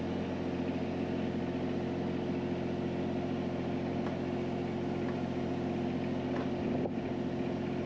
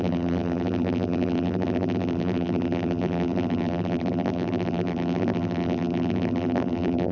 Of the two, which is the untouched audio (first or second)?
first